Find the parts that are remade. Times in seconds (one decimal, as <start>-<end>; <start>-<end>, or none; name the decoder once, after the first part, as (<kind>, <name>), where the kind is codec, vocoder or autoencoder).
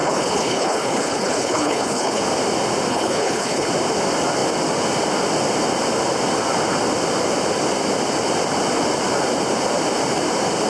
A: 0.0-2.2 (codec, HILCodec); 2.9-3.7